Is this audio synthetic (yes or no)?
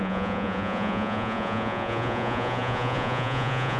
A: yes